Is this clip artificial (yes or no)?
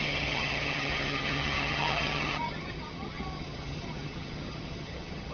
yes